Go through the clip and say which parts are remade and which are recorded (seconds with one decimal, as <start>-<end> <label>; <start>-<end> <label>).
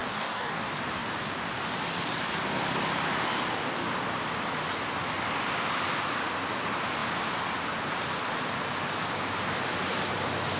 0.0-0.6 remade; 0.6-10.6 recorded